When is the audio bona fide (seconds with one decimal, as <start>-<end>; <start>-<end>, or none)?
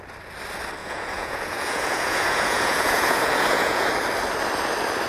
0.0-0.8; 3.9-5.1